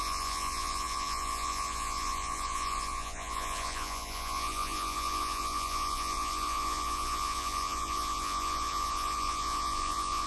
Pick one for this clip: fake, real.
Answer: fake